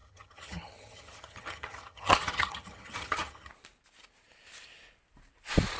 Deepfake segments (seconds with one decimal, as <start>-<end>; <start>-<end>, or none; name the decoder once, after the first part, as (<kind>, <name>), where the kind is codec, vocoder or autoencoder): 0.0-3.5 (vocoder, HiFi-GAN)